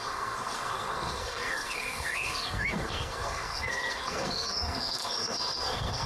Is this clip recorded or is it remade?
remade